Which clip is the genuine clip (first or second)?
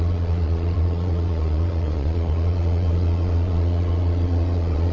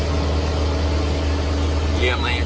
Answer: second